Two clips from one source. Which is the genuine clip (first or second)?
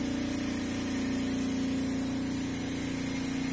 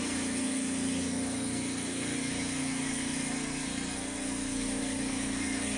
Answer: first